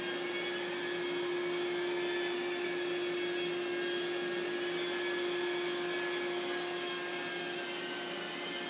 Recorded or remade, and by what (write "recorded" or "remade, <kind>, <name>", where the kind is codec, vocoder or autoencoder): recorded